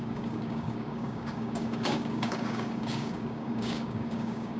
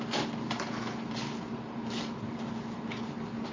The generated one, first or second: first